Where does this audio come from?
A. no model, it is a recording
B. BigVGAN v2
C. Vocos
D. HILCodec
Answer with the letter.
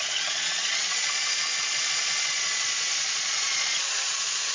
C